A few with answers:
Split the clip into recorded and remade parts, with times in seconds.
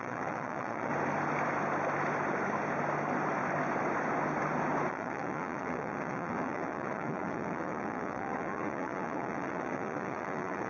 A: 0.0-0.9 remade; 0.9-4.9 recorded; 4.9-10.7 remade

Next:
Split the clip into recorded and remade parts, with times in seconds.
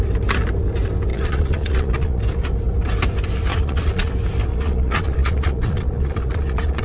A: 0.0-1.1 recorded; 1.1-2.2 remade; 2.2-3.5 recorded; 3.5-4.1 remade; 4.1-4.5 recorded; 4.5-6.8 remade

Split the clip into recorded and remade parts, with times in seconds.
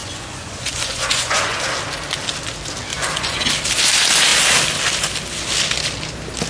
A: 0.0-1.6 remade; 1.6-2.9 recorded; 2.9-3.5 remade; 3.5-6.5 recorded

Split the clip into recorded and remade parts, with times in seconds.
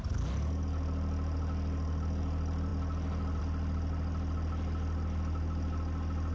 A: 0.0-6.3 recorded